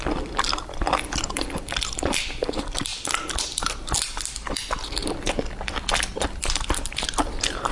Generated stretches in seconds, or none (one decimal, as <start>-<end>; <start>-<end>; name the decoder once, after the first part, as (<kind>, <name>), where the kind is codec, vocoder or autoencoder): 0.0-2.9 (vocoder, BigVGAN v2); 4.2-5.0; 6.4-7.7